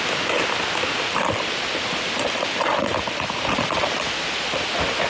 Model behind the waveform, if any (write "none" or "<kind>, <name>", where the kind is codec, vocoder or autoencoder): none